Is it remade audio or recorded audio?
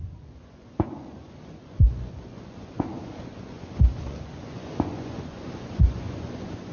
remade